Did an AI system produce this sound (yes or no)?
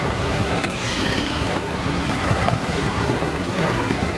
yes